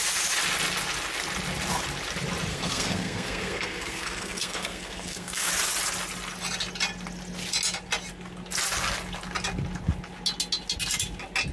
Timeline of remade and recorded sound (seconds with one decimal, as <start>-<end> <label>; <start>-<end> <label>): 0.0-2.5 recorded; 2.5-5.5 remade; 5.5-11.5 recorded